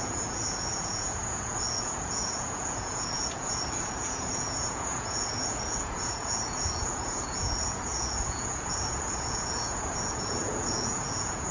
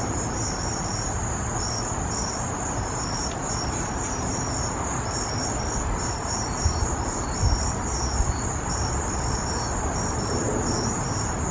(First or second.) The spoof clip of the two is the first